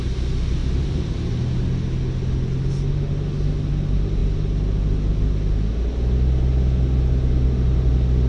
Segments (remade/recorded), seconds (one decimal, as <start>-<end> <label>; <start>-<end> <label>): 0.0-8.3 recorded